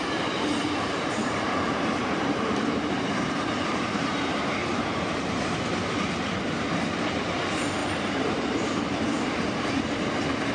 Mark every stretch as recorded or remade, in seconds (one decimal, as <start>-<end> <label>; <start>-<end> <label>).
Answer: 0.0-1.2 recorded; 1.2-5.0 remade; 5.0-7.8 recorded; 7.8-8.8 remade; 8.8-10.5 recorded

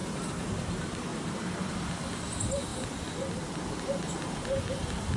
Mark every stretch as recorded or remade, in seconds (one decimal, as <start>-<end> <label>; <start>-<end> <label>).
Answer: 0.0-0.5 remade; 0.5-1.1 recorded; 1.1-1.7 remade; 1.7-5.2 recorded

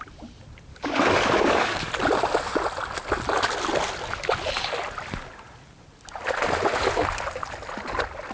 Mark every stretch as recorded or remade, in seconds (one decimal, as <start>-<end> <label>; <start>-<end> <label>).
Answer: 0.0-0.7 recorded; 0.7-1.9 remade; 1.9-8.3 recorded

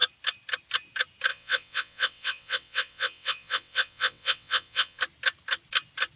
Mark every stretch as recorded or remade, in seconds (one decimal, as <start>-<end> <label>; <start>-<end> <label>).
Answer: 0.0-1.3 recorded; 1.3-5.0 remade; 5.0-6.2 recorded